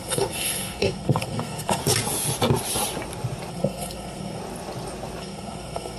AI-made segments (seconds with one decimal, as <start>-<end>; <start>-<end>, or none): 0.0-1.8; 3.5-4.4; 5.2-6.0